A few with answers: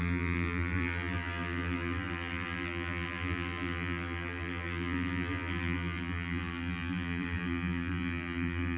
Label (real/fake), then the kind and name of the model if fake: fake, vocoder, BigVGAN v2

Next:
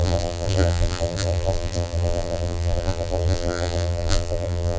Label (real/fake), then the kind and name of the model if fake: fake, vocoder, BigVGAN v2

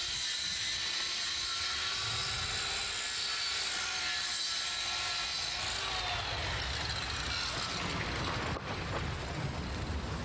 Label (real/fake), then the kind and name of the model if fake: real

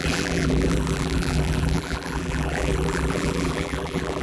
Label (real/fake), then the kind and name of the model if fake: fake, vocoder, BigVGAN v2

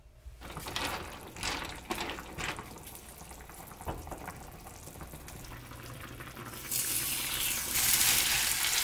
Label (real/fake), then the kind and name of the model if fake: real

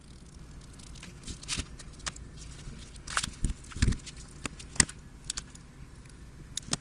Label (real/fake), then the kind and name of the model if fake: real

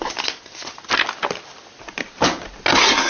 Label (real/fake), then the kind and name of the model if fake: real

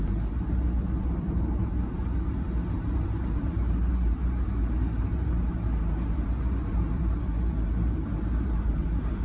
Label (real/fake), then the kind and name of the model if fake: fake, vocoder, BigVGAN v2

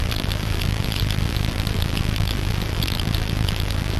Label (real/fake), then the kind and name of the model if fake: fake, vocoder, BigVGAN v2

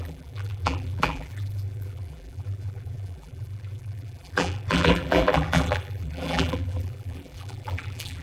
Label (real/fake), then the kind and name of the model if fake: fake, vocoder, BigVGAN v2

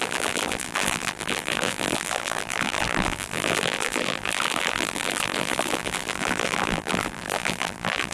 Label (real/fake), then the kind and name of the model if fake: fake, vocoder, BigVGAN v2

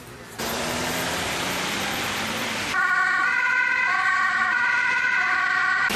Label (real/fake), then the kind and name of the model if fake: fake, vocoder, BigVGAN v2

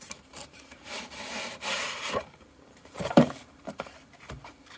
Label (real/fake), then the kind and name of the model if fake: fake, vocoder, BigVGAN v2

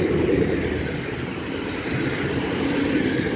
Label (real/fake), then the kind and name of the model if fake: fake, vocoder, BigVGAN v2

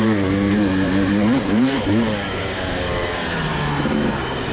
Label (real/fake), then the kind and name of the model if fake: fake, vocoder, BigVGAN v2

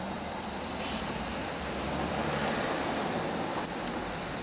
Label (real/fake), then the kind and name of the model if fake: fake, vocoder, BigVGAN v2